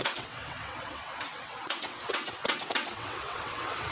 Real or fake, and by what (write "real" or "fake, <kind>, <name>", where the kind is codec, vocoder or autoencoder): fake, vocoder, WaveNeXt